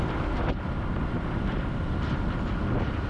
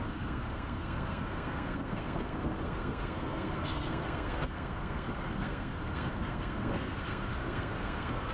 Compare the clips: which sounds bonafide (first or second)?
first